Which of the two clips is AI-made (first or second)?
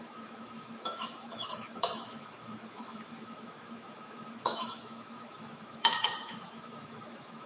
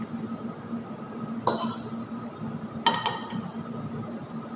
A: first